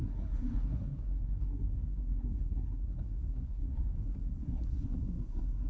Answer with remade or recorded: remade